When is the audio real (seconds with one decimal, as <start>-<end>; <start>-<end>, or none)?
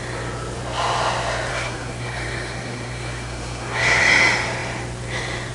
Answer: 0.0-1.5; 4.0-5.5